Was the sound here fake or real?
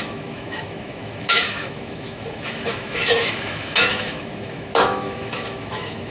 fake